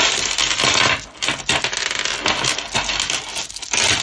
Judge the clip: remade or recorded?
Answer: recorded